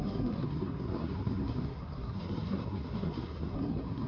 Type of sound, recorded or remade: remade